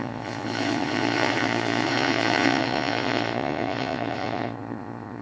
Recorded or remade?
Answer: remade